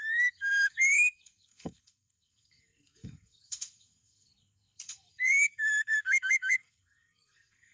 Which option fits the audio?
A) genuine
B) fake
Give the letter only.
B